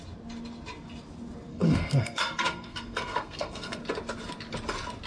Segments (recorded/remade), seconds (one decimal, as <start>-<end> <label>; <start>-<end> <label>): 0.0-1.5 recorded; 1.5-3.8 remade; 3.8-5.1 recorded

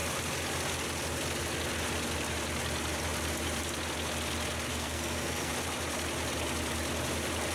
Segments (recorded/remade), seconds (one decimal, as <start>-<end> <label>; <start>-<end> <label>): 0.0-4.7 recorded; 4.7-5.5 remade; 5.5-7.5 recorded

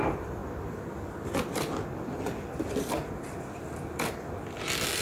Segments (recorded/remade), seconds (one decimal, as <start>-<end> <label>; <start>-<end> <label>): 0.0-5.0 recorded

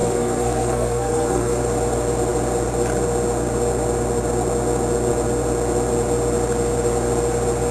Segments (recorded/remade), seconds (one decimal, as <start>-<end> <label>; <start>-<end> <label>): 0.0-1.6 remade; 1.6-7.7 recorded

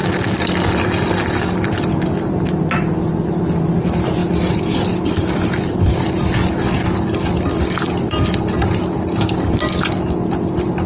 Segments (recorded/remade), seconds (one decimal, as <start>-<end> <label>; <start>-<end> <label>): 0.0-10.9 recorded

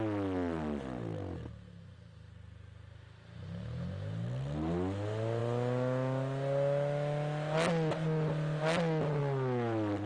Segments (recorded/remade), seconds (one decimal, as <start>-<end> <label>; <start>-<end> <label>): 0.0-10.1 recorded

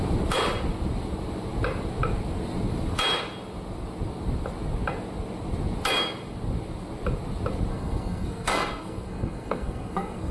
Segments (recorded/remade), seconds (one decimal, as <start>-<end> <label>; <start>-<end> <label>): 0.0-7.7 recorded; 7.7-10.3 remade